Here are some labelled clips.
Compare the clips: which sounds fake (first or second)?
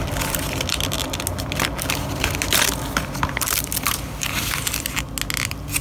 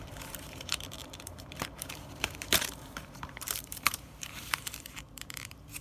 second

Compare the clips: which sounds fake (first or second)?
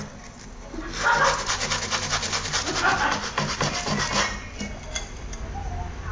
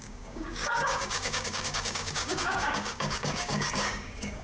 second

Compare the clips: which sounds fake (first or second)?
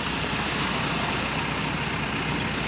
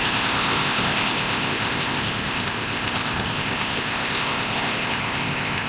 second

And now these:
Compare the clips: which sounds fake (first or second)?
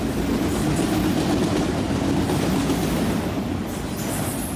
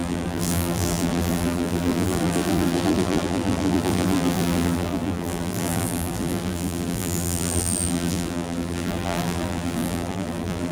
second